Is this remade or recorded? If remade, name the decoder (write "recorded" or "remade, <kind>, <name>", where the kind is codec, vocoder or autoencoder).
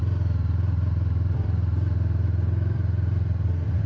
remade, vocoder, BigVGAN v2